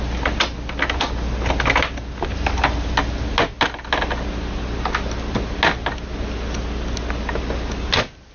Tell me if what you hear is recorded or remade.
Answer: recorded